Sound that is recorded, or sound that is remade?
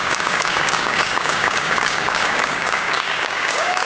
remade